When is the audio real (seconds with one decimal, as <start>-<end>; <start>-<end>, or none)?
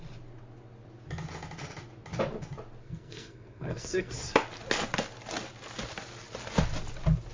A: 0.0-2.8; 4.1-7.3